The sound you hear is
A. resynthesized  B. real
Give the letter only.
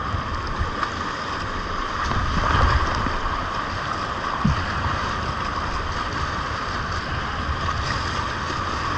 B